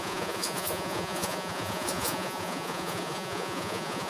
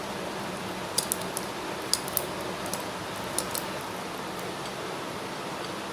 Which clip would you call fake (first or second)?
first